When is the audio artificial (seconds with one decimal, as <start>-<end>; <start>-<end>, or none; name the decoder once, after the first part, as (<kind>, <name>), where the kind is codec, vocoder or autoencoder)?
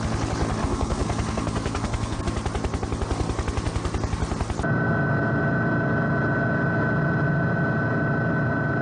0.6-2.2 (codec, SNAC)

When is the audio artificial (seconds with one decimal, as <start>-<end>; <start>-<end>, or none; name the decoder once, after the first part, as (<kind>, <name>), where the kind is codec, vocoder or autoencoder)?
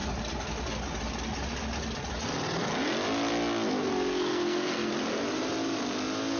3.8-4.9 (codec, SNAC)